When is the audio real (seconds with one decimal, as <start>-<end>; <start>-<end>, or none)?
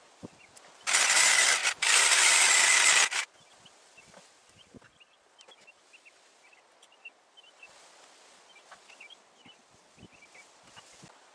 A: 0.0-11.3